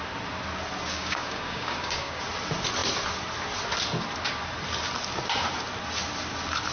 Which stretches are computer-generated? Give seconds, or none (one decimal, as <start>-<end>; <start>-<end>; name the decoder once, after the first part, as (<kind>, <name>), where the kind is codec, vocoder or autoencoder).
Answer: 0.9-2.2 (codec, DAC)